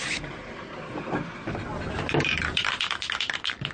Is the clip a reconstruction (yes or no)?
no